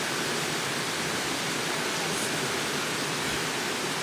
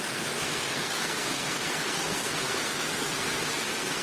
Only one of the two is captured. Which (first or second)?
first